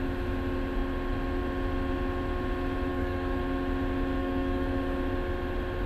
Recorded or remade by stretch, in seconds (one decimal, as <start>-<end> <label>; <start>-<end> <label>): 0.0-2.9 recorded; 2.9-3.4 remade; 3.4-4.2 recorded; 4.2-4.8 remade; 4.8-5.9 recorded